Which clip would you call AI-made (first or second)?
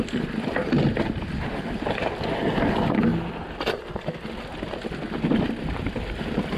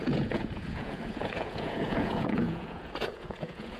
second